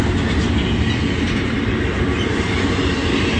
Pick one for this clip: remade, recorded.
recorded